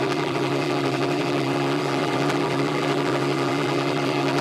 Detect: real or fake fake